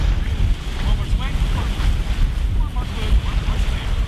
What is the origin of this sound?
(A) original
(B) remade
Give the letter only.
A